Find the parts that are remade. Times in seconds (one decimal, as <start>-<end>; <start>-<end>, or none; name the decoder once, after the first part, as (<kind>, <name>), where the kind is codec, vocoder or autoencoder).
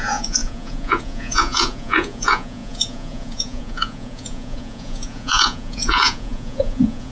0.0-7.1 (vocoder, Vocos)